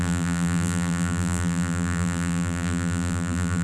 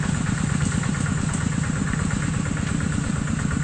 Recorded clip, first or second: second